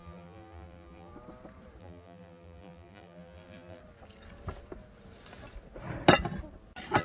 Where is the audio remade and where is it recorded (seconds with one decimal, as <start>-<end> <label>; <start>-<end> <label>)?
0.0-1.1 remade; 1.1-1.8 recorded; 1.8-3.8 remade; 3.8-7.0 recorded